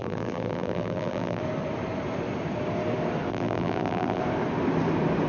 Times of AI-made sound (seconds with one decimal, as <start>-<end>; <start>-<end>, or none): 0.0-1.4; 3.3-4.2